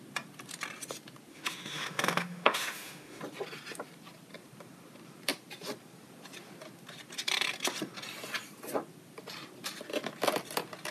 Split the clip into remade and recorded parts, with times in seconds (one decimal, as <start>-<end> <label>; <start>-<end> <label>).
0.0-1.3 recorded; 1.3-3.2 remade; 3.2-10.9 recorded